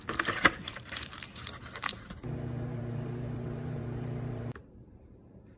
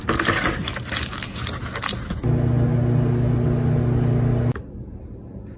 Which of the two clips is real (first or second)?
second